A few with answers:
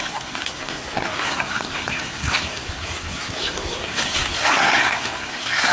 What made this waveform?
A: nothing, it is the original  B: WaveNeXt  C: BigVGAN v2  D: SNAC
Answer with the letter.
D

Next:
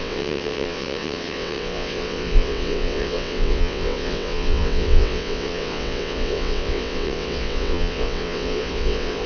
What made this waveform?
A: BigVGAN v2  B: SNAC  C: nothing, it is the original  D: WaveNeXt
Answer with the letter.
D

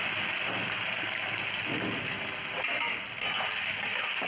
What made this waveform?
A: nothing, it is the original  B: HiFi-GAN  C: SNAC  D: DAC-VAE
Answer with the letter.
A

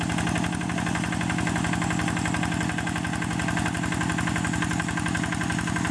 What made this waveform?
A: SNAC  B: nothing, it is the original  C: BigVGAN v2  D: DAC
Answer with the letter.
B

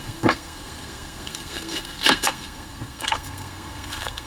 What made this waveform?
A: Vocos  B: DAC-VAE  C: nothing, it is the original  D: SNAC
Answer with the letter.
D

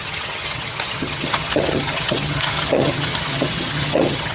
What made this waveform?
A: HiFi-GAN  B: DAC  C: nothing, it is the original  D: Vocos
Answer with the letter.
A